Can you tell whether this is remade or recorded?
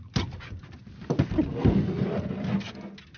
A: recorded